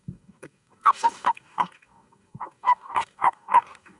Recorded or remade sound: remade